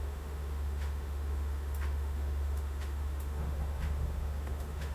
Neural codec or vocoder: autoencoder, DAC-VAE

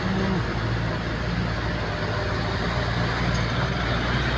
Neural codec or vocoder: none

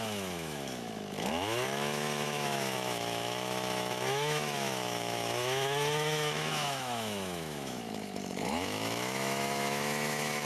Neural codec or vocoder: autoencoder, DAC-VAE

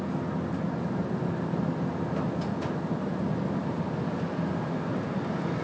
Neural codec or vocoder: none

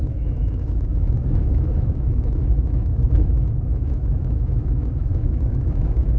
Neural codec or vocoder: autoencoder, DAC-VAE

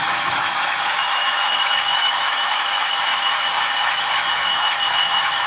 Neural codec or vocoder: autoencoder, DAC-VAE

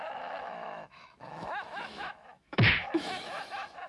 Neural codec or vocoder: autoencoder, DAC-VAE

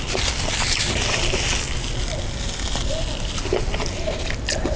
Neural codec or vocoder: none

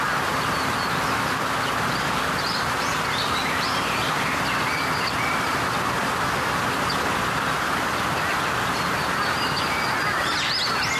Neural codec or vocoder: none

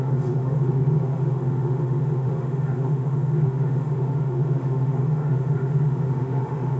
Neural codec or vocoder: autoencoder, DAC-VAE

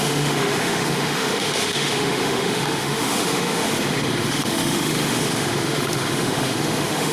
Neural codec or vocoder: autoencoder, DAC-VAE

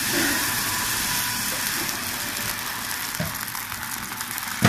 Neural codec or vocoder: none